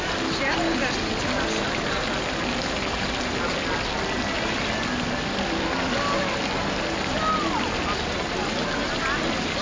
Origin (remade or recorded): recorded